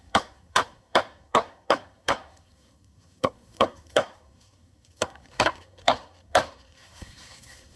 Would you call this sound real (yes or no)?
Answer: no